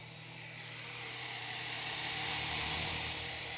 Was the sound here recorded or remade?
remade